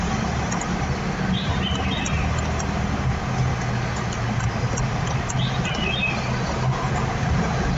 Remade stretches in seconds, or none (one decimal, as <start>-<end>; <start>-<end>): none